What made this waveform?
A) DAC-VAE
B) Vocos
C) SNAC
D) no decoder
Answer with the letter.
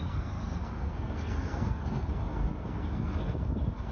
C